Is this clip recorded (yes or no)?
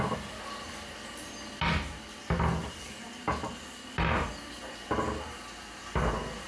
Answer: yes